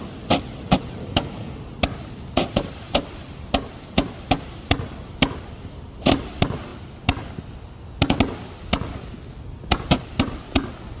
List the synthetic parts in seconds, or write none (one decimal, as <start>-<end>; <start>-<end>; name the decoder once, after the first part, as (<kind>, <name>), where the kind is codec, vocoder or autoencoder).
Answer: 1.0-1.6 (codec, DAC)